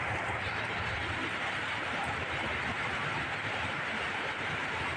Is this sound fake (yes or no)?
no